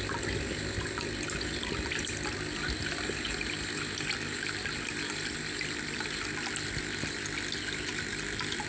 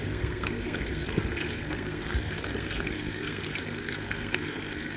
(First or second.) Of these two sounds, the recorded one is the first